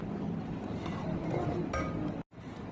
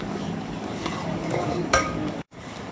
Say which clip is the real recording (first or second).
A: first